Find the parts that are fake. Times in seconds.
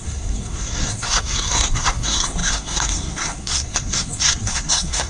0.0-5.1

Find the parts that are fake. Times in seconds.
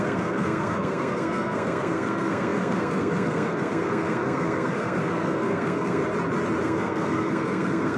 0.0-6.0; 6.6-8.0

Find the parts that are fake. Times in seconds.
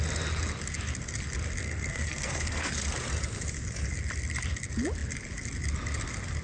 1.6-2.7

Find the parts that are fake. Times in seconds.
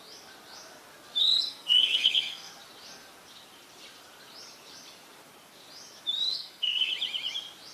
1.2-2.5; 6.3-6.9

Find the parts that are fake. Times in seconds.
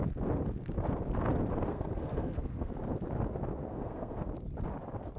1.7-2.7; 3.7-4.3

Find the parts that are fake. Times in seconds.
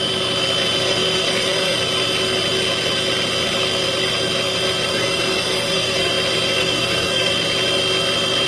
0.8-1.8; 4.9-6.1; 6.6-7.3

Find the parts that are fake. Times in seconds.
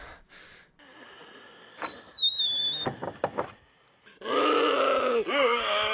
none